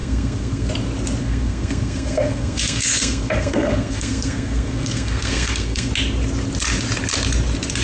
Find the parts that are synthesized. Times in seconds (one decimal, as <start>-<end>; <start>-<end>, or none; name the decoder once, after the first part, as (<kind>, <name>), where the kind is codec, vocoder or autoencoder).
0.0-0.7 (codec, SNAC); 1.2-5.9